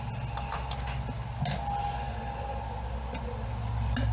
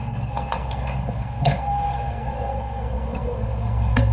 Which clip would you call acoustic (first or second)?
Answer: first